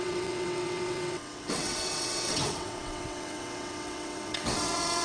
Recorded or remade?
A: remade